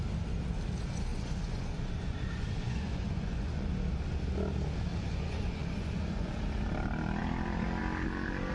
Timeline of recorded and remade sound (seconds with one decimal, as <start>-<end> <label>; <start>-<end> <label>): 0.0-1.1 recorded; 1.1-3.7 remade; 3.7-4.9 recorded; 4.9-6.4 remade; 6.4-8.5 recorded